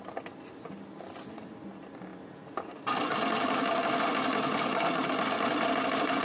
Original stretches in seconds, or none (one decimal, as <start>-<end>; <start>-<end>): 0.0-2.1; 4.0-6.2